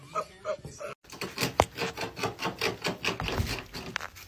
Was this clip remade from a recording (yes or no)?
no